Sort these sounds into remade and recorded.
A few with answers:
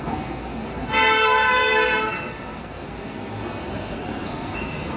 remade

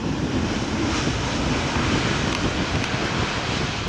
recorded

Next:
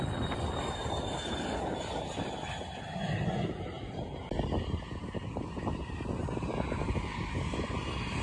recorded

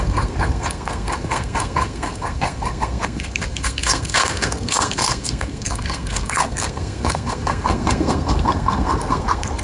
remade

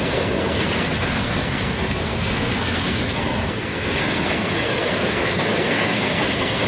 remade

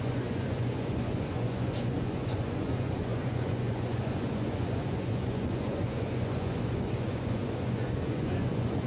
remade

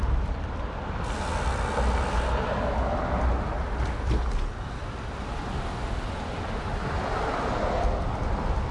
recorded